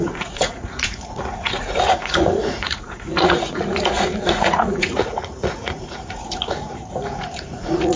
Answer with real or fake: fake